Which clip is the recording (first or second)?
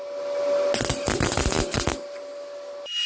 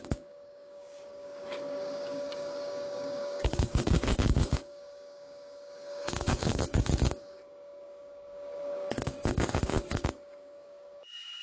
first